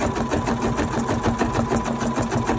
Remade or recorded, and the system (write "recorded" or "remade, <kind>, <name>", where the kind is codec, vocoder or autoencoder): recorded